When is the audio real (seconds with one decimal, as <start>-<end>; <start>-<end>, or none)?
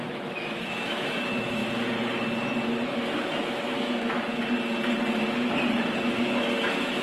1.6-2.7; 4.4-5.8